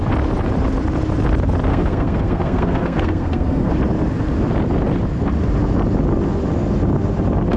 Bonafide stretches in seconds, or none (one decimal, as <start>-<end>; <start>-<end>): 0.0-1.7; 3.7-7.6